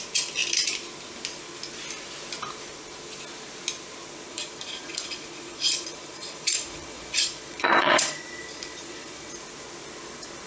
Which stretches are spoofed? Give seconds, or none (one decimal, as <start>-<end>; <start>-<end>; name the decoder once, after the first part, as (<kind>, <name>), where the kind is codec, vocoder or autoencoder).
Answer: 4.3-9.3 (vocoder, Vocos)